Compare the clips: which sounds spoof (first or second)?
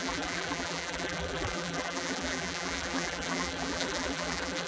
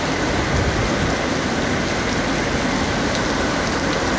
first